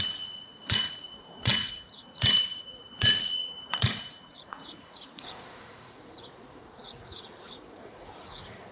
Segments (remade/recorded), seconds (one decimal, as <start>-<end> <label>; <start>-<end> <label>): 0.0-8.7 remade